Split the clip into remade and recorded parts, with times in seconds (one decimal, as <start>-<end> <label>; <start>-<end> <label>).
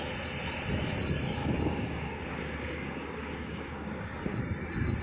0.0-1.4 recorded; 1.4-4.4 remade; 4.4-5.0 recorded